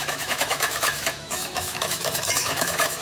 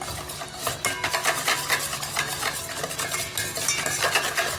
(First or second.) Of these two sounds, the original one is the second